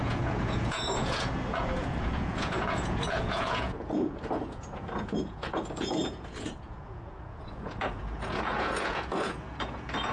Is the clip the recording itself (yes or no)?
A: no